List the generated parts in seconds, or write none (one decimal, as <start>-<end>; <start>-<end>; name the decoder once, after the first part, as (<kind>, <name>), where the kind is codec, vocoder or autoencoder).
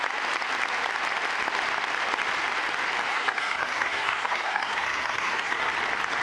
3.1-5.7 (codec, SNAC)